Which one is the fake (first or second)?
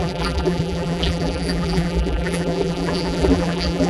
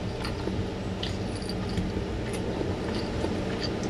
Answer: first